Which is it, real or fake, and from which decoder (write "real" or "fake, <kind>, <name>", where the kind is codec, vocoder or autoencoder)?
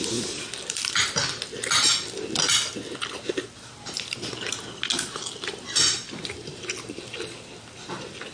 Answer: real